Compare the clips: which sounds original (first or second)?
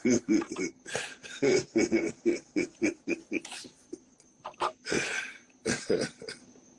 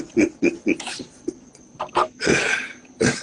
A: second